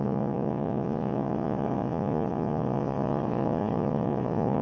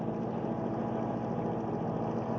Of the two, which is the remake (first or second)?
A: first